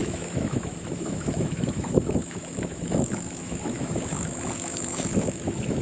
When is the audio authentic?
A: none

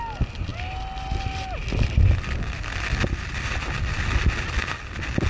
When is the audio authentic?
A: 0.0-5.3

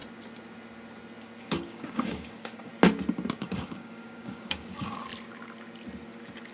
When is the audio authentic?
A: 0.0-1.4; 2.7-3.4; 5.1-6.5

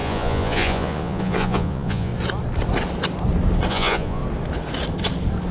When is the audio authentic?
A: 2.1-3.7; 4.2-5.5

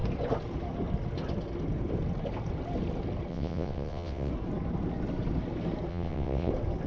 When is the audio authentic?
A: 0.0-3.3; 4.3-5.9; 6.5-6.9

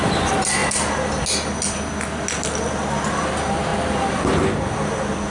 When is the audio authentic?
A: 0.0-5.3

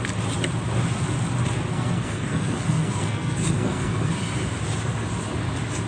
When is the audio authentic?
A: 0.0-1.7; 4.1-5.9

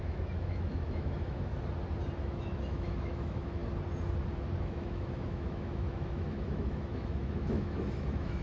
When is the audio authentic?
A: 1.5-2.2; 3.6-4.6